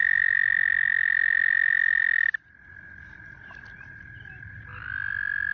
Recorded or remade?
recorded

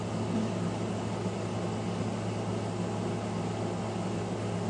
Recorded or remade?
recorded